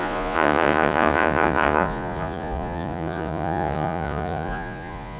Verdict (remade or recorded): remade